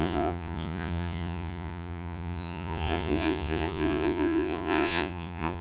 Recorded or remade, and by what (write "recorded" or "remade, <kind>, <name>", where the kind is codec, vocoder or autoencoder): remade, vocoder, Vocos